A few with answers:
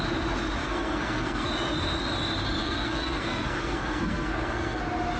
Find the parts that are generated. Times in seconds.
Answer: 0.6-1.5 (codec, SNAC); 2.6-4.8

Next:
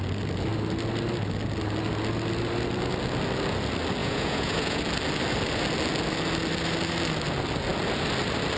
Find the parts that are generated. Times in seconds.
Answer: 4.0-4.8 (vocoder, Vocos)

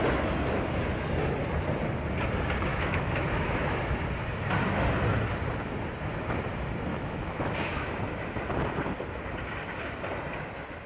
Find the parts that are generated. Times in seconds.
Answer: 2.7-3.8 (autoencoder, DAC-VAE); 6.9-7.9

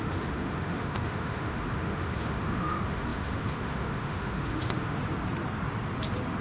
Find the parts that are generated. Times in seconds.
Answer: 0.0-5.0 (autoencoder, DAC-VAE)

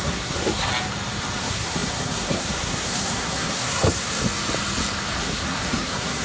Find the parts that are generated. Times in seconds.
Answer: 0.0-0.7 (codec, SNAC); 1.4-4.2; 5.2-6.2

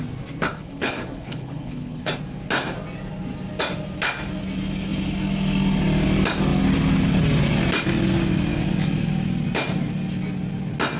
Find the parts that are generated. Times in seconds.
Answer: 0.5-2.1 (codec, HILCodec)

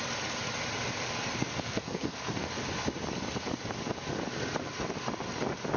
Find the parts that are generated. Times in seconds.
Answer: 1.4-2.5 (codec, SNAC)

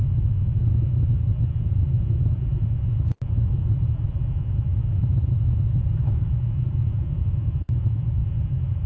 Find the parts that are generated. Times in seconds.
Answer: none